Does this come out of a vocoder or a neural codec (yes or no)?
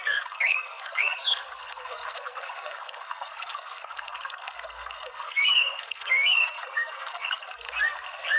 yes